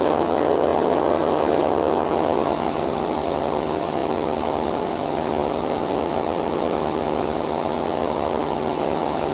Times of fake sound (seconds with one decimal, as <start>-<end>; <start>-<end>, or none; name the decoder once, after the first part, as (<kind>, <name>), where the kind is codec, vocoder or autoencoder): 0.0-9.3 (vocoder, HiFi-GAN)